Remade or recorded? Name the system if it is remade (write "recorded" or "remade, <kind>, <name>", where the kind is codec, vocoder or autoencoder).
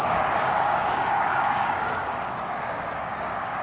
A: remade, codec, DAC